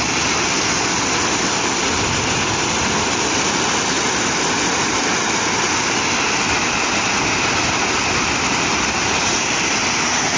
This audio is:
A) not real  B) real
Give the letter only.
B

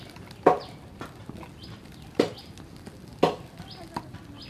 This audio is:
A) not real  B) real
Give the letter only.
B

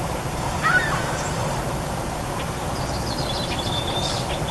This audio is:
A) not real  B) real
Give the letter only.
A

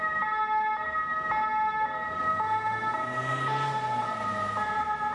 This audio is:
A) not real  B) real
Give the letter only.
B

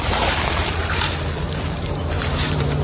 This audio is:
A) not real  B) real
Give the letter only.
A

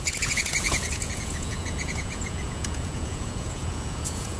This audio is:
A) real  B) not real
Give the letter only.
B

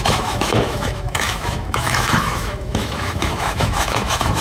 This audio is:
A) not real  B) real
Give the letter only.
A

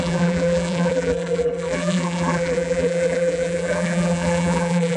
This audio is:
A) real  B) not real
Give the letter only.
B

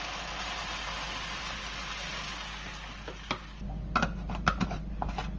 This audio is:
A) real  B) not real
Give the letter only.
A